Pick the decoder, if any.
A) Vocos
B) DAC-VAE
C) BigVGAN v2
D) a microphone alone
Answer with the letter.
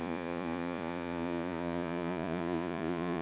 A